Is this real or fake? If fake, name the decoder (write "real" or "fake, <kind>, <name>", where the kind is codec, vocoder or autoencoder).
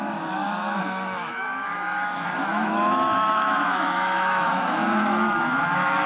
fake, autoencoder, DAC-VAE